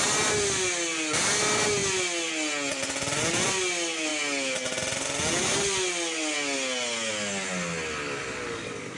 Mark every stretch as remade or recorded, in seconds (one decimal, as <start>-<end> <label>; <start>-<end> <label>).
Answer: 0.0-9.0 recorded